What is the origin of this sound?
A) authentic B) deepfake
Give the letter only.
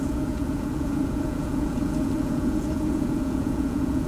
B